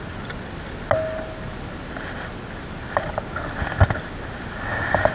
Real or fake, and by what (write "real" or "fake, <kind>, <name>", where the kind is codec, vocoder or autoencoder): real